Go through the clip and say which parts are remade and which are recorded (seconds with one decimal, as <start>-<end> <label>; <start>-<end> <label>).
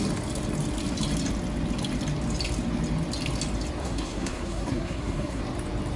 0.0-3.8 recorded; 3.8-5.4 remade; 5.4-6.0 recorded